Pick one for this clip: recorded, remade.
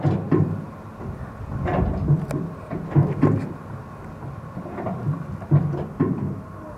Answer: recorded